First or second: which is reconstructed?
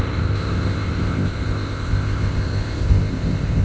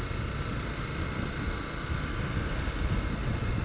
first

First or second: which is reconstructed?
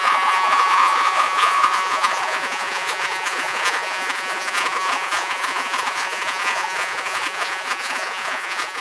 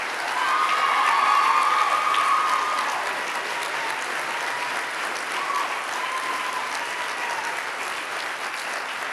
first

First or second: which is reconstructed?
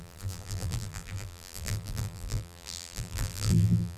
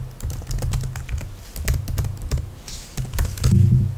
first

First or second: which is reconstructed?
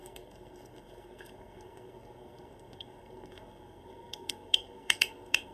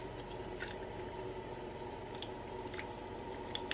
first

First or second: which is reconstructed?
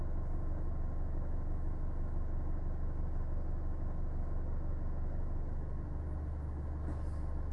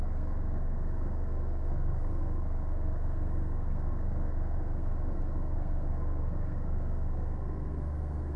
second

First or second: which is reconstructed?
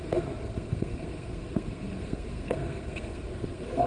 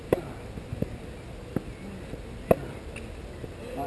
first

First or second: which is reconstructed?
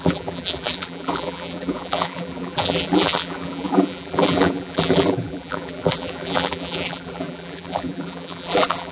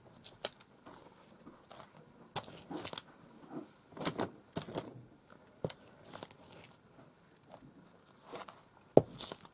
first